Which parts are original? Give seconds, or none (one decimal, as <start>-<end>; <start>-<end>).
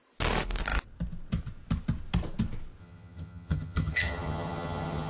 0.0-2.8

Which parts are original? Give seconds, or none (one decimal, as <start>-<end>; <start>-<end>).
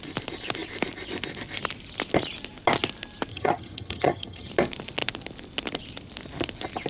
0.0-3.3; 4.5-6.9